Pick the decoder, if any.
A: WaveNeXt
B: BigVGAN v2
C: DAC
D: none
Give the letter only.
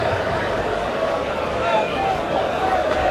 C